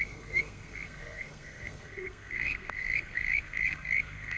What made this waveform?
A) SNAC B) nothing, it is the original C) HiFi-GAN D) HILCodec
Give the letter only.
A